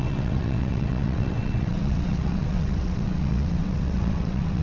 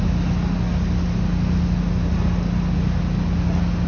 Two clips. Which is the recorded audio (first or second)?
second